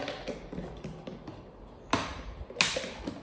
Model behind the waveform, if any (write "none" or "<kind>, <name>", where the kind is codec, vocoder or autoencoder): none